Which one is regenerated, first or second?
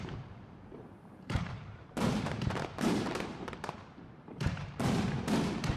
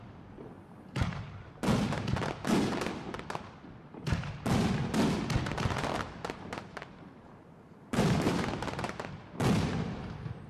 first